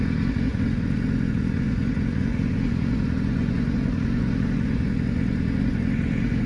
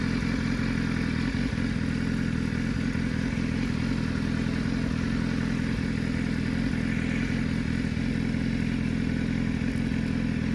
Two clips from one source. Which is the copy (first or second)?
first